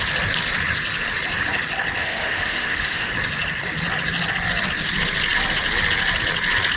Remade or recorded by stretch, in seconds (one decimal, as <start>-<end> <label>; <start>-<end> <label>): 0.0-2.0 recorded; 2.0-3.1 remade; 3.1-6.8 recorded